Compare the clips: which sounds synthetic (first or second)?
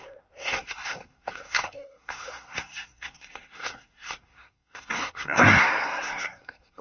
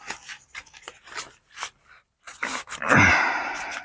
first